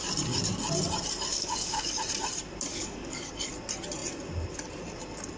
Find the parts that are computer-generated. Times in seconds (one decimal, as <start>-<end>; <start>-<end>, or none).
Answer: 1.3-2.0; 2.7-3.3